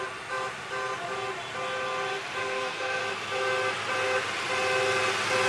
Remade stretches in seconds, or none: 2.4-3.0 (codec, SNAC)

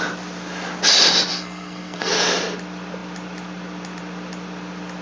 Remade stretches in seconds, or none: 1.3-2.1 (codec, SNAC)

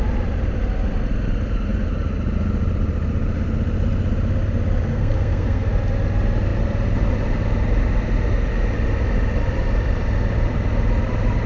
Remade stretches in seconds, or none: 4.9-5.7 (codec, SNAC)

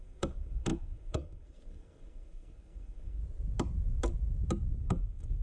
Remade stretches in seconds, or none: 0.0-3.2 (codec, SNAC); 4.8-5.4

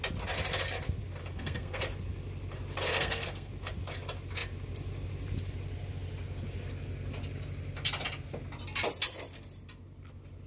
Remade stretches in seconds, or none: 1.2-1.8 (codec, SNAC); 2.9-3.5

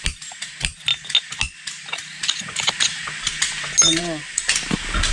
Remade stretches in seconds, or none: none

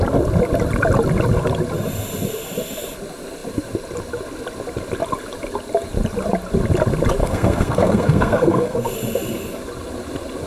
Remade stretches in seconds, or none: 7.2-8.9 (codec, SNAC)

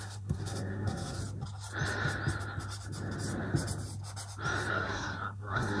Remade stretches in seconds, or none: 0.0-1.2 (codec, SNAC); 4.7-5.8